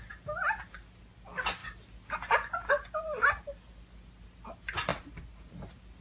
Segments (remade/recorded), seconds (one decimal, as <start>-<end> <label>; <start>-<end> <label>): 0.0-6.0 recorded